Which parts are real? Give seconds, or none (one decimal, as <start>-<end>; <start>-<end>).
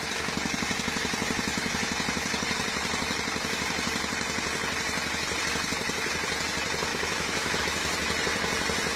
0.0-6.9; 7.6-9.0